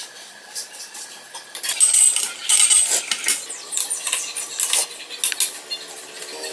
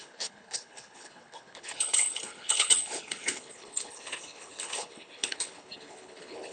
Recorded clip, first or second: first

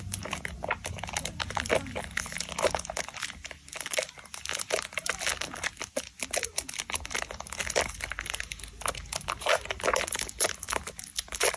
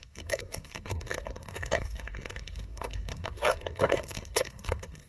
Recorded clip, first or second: first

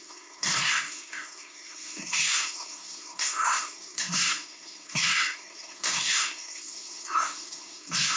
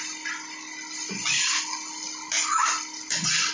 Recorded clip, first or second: second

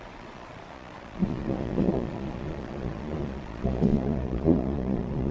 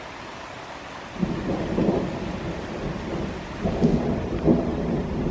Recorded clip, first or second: second